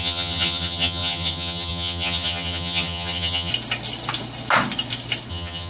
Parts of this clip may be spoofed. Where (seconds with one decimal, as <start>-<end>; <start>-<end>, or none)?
0.0-3.5; 5.3-5.7